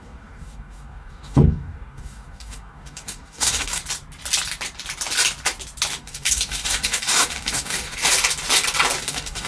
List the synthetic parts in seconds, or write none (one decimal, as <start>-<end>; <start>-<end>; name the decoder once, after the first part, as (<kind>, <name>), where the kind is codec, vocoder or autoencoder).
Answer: 0.0-3.8 (codec, DAC); 6.0-8.0; 9.0-9.5